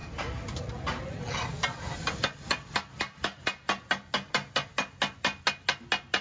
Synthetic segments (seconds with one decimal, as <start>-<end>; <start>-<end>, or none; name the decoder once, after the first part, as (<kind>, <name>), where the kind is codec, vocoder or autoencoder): none